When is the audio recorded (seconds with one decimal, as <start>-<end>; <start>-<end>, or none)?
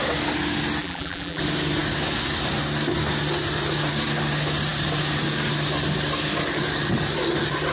0.0-0.8; 1.4-7.7